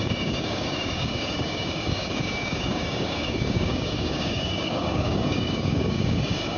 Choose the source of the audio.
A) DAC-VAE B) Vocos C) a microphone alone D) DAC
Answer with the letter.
D